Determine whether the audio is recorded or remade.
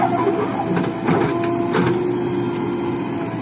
recorded